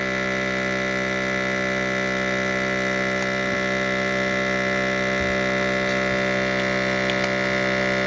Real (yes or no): yes